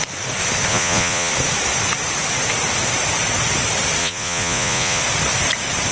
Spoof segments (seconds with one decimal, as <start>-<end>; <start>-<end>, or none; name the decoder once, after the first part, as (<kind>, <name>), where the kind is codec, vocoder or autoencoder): 0.7-1.3 (vocoder, Vocos); 4.0-5.0